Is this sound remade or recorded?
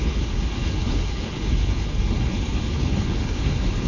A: remade